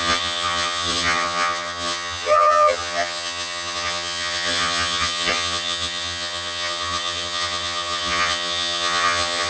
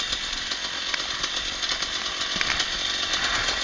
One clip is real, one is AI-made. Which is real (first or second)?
second